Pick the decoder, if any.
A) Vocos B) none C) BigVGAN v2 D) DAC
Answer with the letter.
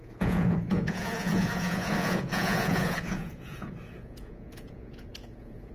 A